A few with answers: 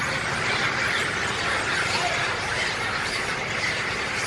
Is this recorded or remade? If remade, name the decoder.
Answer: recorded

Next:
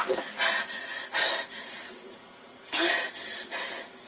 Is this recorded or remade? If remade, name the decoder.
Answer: recorded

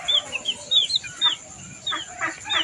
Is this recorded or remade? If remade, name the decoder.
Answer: recorded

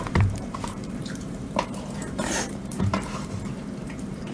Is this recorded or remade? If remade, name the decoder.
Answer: remade, vocoder, BigVGAN v2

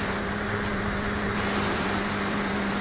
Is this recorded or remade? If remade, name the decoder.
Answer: remade, vocoder, BigVGAN v2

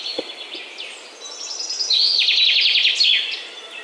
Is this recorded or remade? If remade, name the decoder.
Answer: recorded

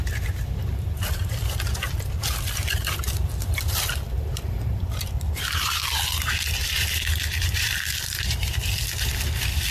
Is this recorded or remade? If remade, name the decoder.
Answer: remade, vocoder, BigVGAN v2